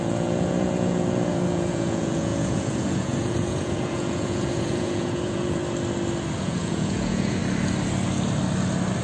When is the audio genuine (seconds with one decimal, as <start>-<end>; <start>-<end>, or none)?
5.6-6.4; 7.4-9.0